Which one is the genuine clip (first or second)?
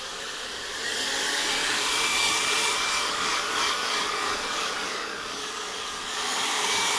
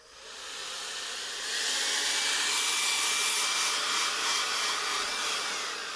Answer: second